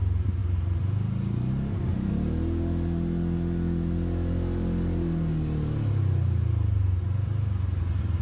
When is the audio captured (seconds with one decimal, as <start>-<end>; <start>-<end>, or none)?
0.0-8.2